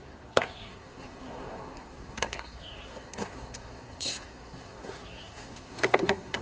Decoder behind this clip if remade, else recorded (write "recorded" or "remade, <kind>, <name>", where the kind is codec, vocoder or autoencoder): remade, codec, SNAC